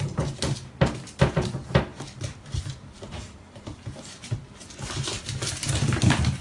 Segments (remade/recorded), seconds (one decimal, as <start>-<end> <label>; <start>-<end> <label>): 0.0-6.4 recorded